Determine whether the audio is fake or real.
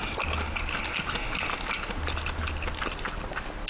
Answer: real